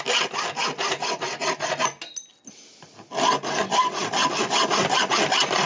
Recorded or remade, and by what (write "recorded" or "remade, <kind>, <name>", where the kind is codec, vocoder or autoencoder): recorded